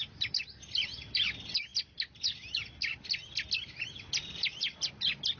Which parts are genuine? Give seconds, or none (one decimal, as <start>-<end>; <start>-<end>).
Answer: 0.0-5.4